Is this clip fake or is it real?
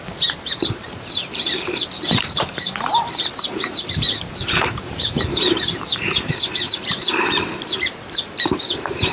fake